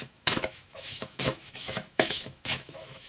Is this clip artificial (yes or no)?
yes